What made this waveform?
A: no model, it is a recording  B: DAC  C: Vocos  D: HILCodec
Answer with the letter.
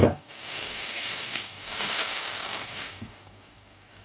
B